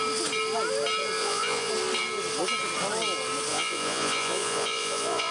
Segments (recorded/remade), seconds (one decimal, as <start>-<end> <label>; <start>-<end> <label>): 0.0-1.2 recorded; 1.2-1.7 remade; 1.7-3.5 recorded; 3.5-5.3 remade